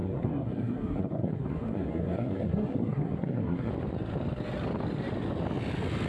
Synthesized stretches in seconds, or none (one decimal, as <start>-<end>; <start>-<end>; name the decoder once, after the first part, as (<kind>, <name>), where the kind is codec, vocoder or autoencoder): 0.0-3.7 (codec, SNAC)